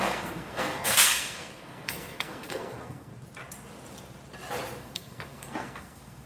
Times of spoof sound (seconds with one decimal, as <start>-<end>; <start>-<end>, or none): 0.0-3.1; 4.8-6.3